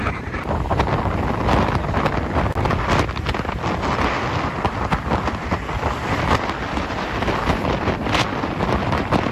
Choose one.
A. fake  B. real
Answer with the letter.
B